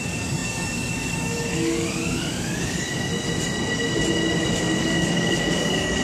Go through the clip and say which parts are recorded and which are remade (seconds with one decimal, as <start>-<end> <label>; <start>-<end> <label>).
0.0-3.1 remade; 3.1-4.8 recorded; 4.8-6.0 remade